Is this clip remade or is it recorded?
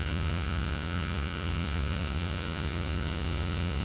remade